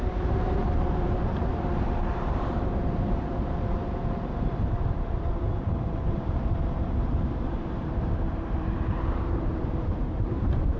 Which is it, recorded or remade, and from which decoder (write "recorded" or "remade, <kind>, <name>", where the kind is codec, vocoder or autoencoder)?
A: remade, vocoder, BigVGAN v2